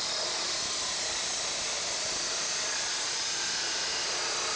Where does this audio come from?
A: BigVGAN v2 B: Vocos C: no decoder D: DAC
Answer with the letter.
A